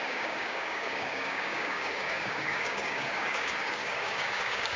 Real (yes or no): no